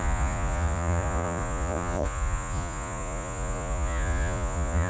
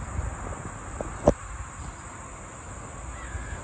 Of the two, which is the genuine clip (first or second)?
second